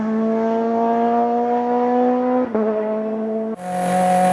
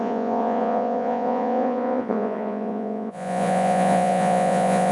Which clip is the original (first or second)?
first